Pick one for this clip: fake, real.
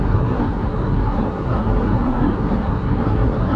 fake